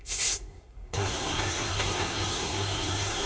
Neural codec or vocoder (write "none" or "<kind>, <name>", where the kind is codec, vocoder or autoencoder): codec, SNAC